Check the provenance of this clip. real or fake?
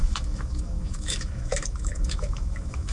fake